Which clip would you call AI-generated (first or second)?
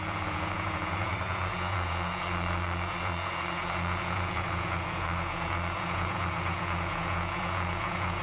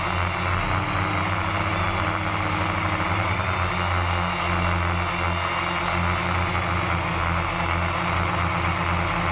first